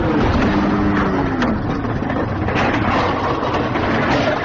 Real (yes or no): yes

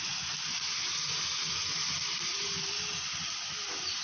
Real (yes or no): yes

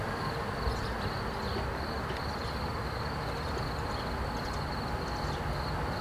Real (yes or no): yes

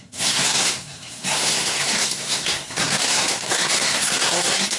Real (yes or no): no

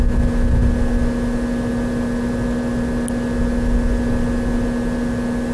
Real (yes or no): yes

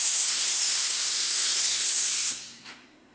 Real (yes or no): no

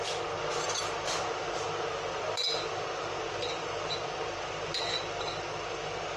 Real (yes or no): yes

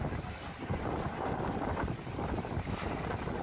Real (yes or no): yes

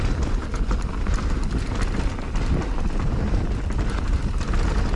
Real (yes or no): yes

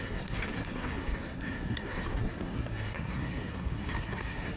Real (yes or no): no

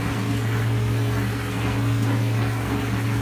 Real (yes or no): no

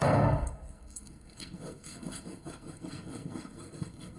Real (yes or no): no